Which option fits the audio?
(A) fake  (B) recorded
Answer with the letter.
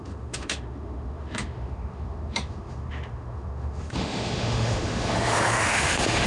A